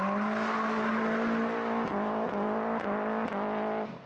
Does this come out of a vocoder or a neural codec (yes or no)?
no